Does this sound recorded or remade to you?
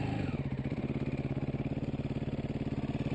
remade